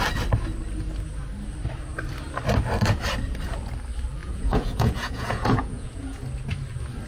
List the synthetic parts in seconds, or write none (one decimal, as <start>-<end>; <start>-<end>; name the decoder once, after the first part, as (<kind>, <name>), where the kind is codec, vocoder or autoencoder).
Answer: 4.2-6.2 (vocoder, Vocos)